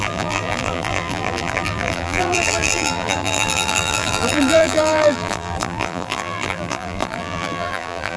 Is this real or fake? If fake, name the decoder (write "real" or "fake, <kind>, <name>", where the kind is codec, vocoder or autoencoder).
fake, vocoder, BigVGAN v2